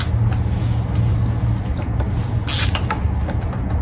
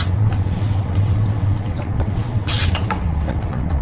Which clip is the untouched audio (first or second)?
first